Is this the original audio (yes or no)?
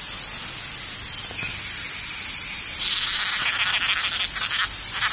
yes